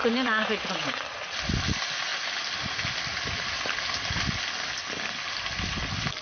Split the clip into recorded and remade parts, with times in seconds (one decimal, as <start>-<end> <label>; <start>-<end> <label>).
0.0-1.0 remade; 1.0-6.2 recorded